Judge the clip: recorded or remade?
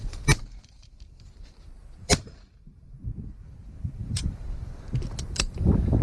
remade